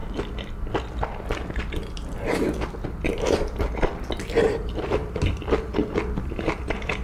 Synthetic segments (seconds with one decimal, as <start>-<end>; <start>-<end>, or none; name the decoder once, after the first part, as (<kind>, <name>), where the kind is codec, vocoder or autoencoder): 4.2-5.0 (vocoder, BigVGAN v2); 6.2-7.0